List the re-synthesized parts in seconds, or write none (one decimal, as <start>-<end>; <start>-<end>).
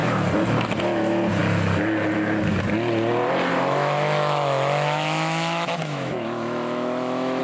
3.5-7.4